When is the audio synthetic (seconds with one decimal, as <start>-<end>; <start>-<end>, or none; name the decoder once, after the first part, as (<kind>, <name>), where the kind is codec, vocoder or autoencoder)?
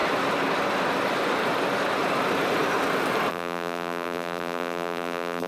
3.3-5.5 (vocoder, BigVGAN v2)